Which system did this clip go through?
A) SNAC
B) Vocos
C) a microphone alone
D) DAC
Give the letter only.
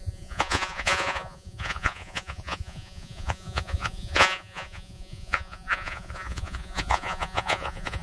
B